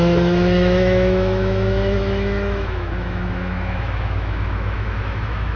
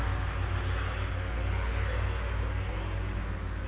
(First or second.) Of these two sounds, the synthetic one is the first